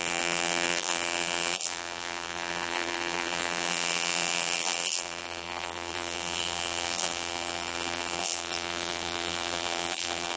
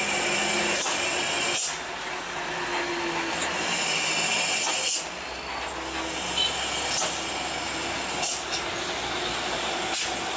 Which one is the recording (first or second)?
second